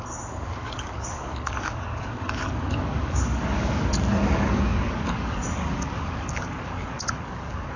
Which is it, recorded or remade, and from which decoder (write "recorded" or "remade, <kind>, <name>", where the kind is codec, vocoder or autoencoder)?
remade, codec, DAC